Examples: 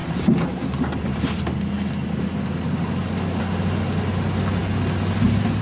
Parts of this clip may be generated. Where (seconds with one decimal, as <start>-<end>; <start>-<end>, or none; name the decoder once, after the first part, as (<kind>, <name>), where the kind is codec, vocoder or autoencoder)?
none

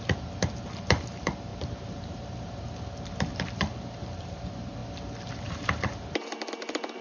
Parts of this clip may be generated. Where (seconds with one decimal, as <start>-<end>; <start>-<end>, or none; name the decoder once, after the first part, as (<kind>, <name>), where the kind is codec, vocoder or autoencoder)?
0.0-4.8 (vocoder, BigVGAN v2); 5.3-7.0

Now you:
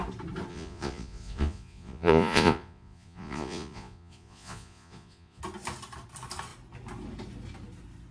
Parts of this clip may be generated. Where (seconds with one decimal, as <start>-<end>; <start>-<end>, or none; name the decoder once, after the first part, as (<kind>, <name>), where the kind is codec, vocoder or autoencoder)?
0.5-5.4 (vocoder, Vocos)

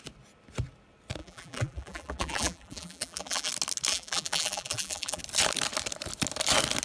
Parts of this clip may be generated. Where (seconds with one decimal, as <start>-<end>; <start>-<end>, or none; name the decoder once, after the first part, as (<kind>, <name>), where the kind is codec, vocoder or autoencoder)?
1.2-3.5 (vocoder, BigVGAN v2); 3.9-5.2

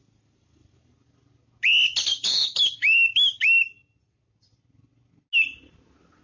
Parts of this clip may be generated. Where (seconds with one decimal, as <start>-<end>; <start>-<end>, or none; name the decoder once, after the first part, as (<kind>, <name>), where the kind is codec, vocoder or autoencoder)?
2.1-3.6 (codec, DAC)